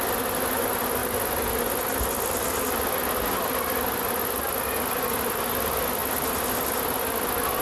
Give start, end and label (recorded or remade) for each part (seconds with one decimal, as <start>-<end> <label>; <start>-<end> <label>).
0.0-7.6 recorded